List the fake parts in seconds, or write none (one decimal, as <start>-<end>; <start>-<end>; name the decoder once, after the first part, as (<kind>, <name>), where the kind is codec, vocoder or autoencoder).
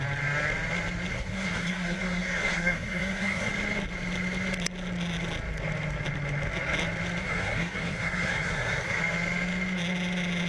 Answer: 1.1-3.5 (codec, SNAC); 7.2-9.0